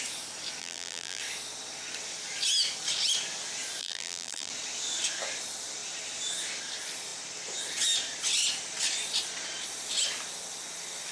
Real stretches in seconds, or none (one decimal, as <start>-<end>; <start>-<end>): 0.0-0.6; 1.2-3.8; 4.5-11.1